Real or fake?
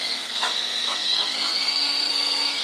fake